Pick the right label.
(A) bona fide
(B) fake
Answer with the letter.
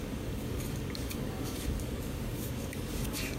B